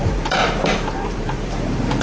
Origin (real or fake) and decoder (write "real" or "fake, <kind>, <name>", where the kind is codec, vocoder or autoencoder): fake, vocoder, BigVGAN v2